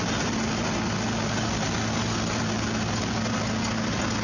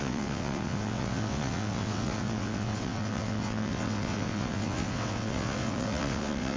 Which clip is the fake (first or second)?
second